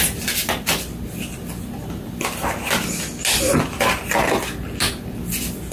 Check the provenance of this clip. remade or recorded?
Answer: recorded